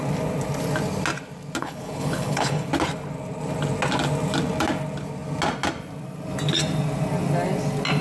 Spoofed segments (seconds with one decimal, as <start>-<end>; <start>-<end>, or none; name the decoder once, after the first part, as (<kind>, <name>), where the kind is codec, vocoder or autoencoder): 1.6-2.7 (codec, HILCodec)